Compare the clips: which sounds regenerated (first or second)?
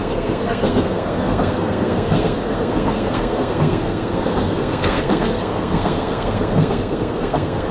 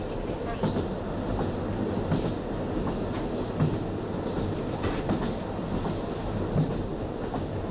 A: first